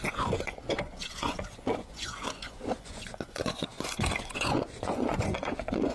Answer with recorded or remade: remade